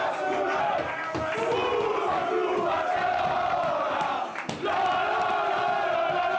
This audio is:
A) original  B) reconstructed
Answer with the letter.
A